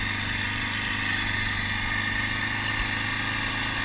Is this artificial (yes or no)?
no